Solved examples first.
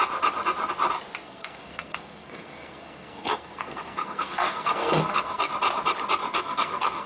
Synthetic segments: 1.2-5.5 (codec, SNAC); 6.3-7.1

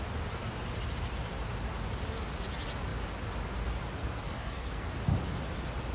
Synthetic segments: 4.0-4.9 (codec, SNAC)